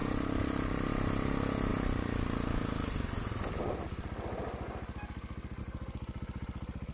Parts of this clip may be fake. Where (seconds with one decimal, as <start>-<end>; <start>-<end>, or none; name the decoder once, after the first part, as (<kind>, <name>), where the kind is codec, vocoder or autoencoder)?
0.0-0.9 (vocoder, BigVGAN v2)